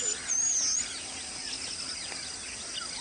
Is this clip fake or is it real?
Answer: real